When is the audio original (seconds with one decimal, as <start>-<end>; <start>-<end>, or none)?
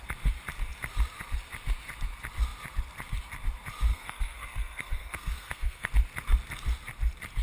0.0-3.9; 5.9-7.4